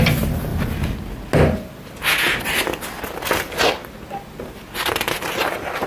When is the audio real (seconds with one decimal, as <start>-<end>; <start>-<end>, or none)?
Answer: 0.0-5.9